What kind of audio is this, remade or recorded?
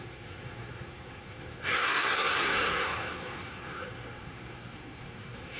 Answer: remade